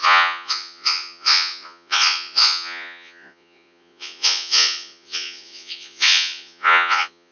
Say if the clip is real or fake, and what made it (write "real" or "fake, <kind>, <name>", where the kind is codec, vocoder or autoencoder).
fake, vocoder, Vocos